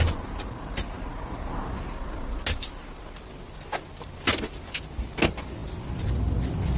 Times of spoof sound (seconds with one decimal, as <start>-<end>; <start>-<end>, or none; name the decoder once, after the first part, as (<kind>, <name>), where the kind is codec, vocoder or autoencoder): none